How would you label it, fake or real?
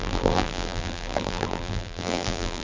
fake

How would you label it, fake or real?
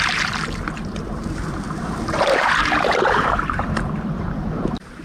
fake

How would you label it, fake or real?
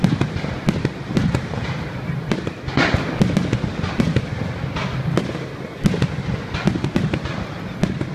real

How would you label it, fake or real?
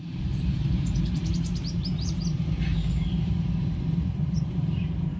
fake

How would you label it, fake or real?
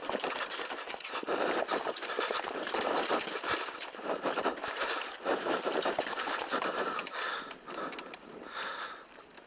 fake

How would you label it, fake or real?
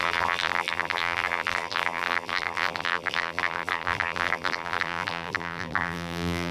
fake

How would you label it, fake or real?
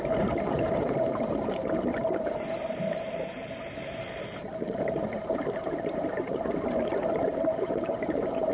fake